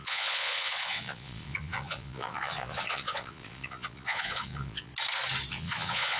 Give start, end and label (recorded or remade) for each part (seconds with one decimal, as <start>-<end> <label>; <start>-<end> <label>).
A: 0.0-4.9 remade; 4.9-5.5 recorded; 5.5-6.2 remade